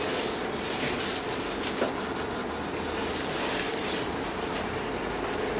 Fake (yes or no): no